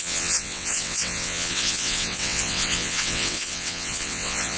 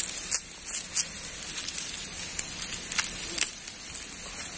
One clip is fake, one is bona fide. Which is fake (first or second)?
first